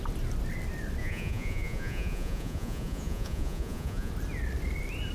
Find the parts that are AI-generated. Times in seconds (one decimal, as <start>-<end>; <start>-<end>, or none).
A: 1.0-4.1